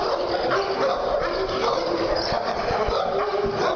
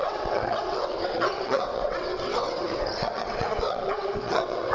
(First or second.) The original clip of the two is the first